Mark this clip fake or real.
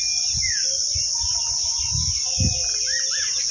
real